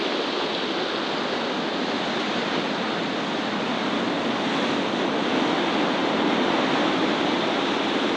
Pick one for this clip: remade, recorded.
recorded